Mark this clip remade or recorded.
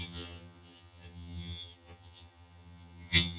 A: remade